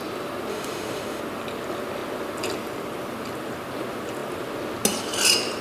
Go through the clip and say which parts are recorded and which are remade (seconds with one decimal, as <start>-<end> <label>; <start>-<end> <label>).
0.0-0.5 recorded; 0.5-1.2 remade; 1.2-5.6 recorded